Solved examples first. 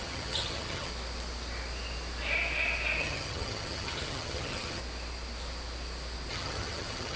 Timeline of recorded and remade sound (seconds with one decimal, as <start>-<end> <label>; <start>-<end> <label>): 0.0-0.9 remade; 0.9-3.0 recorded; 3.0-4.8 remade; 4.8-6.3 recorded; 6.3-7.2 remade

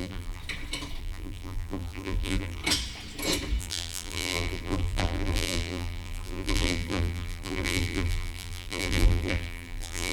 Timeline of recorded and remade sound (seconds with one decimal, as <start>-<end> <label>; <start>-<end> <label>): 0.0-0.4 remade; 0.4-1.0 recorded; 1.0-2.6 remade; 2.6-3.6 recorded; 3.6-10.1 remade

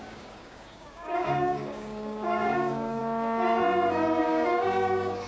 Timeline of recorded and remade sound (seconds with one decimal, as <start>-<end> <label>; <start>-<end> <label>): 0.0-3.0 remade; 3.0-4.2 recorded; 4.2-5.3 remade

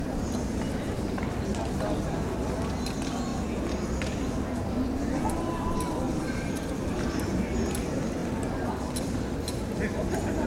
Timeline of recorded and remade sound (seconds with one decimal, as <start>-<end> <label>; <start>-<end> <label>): 0.0-6.1 recorded; 6.1-7.3 remade; 7.3-10.5 recorded

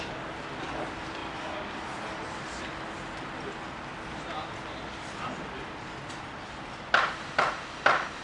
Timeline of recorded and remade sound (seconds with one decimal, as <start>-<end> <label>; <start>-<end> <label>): 0.0-8.2 recorded

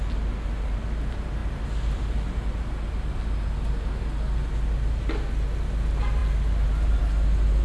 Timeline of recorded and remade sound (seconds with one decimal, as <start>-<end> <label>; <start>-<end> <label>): 0.0-7.6 recorded